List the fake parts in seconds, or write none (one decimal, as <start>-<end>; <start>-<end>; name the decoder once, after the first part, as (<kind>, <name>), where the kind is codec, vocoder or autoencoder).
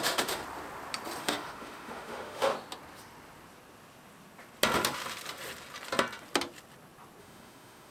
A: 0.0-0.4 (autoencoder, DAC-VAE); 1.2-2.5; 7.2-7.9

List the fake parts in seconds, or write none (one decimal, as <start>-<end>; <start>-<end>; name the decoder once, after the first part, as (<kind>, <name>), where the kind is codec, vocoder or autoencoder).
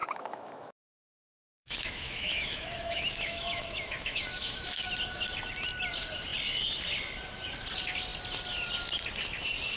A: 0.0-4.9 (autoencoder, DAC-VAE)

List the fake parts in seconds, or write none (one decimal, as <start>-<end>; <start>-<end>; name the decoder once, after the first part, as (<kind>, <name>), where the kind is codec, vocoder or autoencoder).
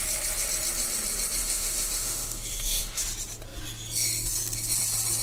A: 1.4-3.0 (autoencoder, DAC-VAE)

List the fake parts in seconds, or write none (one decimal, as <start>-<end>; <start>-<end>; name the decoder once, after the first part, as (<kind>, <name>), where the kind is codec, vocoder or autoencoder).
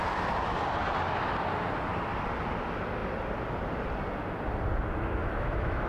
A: 5.2-5.9 (autoencoder, DAC-VAE)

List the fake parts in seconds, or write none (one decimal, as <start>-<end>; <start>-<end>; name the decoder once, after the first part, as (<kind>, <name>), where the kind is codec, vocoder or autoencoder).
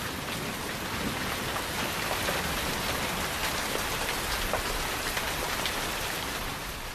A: none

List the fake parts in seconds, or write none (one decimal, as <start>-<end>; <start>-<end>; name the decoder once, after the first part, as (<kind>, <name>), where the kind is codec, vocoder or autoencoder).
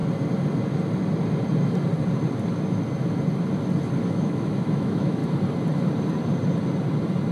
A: 4.1-5.2 (autoencoder, DAC-VAE)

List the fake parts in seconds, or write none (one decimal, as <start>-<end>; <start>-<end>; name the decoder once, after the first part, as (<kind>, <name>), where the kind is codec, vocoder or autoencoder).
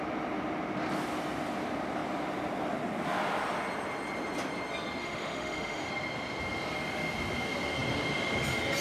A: 5.0-5.9 (autoencoder, DAC-VAE)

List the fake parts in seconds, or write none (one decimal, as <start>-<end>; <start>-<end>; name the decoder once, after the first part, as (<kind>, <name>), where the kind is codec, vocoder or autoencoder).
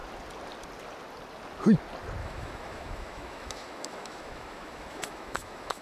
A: 2.2-5.8 (autoencoder, DAC-VAE)